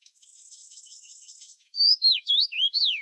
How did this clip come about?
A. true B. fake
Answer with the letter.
B